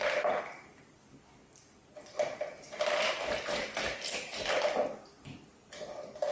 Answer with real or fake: fake